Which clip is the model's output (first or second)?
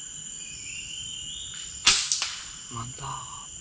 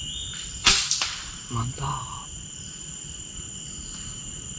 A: second